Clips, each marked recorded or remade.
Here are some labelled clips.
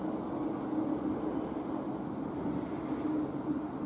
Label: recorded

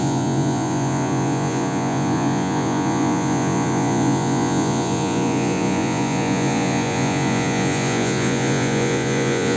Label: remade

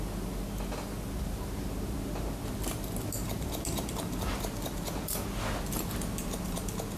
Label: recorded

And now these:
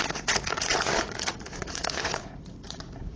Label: remade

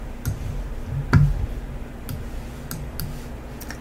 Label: recorded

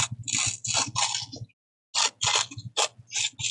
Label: recorded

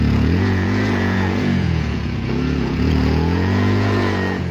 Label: remade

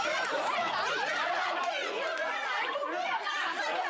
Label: remade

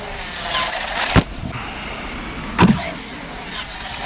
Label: recorded